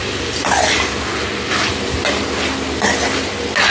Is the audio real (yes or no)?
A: yes